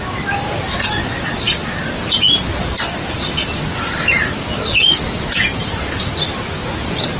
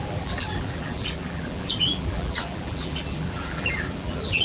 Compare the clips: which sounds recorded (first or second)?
first